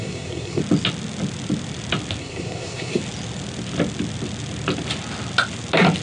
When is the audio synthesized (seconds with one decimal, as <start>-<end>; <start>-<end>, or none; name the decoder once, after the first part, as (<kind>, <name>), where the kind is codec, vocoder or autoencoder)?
0.0-0.6 (codec, SNAC); 2.2-3.0